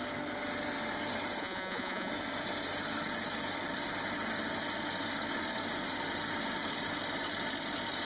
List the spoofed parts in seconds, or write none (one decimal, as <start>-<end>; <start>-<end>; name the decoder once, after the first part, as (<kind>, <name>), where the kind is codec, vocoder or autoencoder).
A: 1.4-2.1 (vocoder, Vocos)

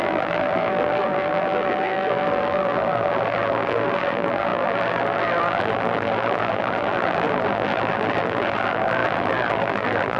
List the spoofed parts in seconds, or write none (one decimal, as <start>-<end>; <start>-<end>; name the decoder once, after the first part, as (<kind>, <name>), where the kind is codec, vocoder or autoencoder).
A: 0.0-10.2 (vocoder, BigVGAN v2)

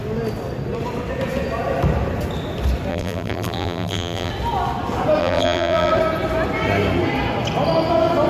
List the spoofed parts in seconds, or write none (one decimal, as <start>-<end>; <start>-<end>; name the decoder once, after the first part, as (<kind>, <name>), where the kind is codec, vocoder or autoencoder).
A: 2.9-4.3 (vocoder, BigVGAN v2); 5.2-5.9

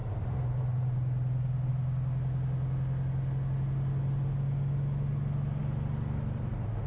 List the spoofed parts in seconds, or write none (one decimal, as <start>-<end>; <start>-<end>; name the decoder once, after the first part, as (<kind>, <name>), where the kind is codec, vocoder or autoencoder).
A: none

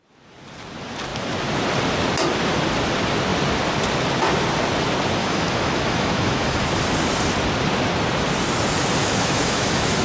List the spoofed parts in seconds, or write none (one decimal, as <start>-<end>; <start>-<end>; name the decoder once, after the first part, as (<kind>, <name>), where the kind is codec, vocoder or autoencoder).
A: 5.2-6.7 (autoencoder, DAC-VAE); 9.0-10.0

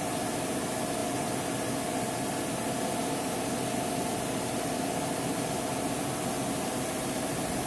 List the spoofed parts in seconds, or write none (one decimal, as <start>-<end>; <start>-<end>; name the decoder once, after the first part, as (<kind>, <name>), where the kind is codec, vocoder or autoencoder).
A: none

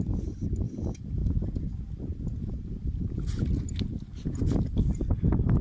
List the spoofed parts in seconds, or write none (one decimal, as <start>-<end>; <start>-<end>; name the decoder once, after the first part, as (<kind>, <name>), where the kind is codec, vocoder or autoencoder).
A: none

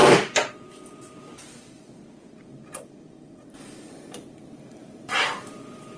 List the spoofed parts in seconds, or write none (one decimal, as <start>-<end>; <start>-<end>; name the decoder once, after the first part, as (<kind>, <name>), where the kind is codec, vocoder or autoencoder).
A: 0.0-6.0 (vocoder, BigVGAN v2)